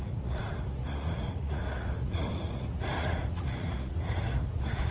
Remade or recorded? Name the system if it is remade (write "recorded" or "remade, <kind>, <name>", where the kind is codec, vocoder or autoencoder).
remade, vocoder, Vocos